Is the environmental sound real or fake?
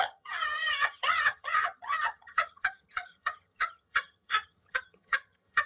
fake